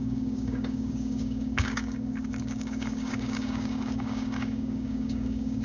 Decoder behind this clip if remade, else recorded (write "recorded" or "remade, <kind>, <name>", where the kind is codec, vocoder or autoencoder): remade, codec, DAC